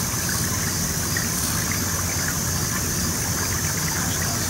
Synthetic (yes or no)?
no